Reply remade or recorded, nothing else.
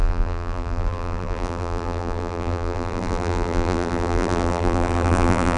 remade